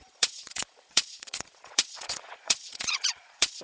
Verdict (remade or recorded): remade